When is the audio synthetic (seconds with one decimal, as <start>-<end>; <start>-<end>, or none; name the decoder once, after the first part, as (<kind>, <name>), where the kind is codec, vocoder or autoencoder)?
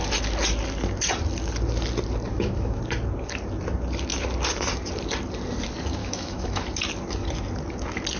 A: 2.3-2.8 (autoencoder, DAC-VAE); 6.0-6.6